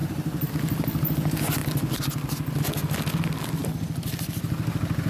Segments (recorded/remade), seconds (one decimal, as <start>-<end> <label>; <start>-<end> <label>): 0.0-0.5 remade; 0.5-5.1 recorded